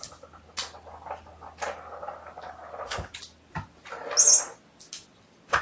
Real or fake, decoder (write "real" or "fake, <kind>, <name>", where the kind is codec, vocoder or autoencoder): real